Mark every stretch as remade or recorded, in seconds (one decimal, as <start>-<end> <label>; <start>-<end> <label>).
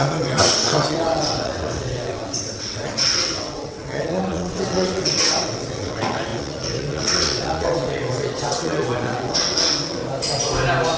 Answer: 0.0-10.0 remade; 10.0-11.0 recorded